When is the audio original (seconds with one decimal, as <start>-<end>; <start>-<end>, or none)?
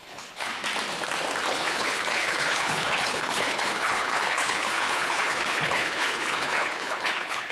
0.5-1.5